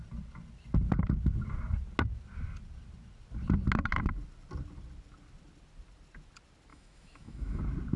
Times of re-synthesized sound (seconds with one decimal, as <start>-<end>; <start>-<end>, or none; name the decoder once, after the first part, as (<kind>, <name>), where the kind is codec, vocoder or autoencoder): 6.7-7.6 (autoencoder, DAC-VAE)

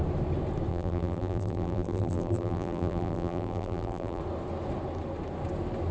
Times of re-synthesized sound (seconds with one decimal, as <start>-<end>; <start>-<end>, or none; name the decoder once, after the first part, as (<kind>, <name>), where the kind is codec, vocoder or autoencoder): 0.7-4.2 (vocoder, BigVGAN v2)